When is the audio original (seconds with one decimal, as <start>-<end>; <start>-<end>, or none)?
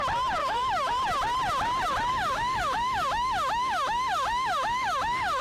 0.0-0.4; 0.9-2.1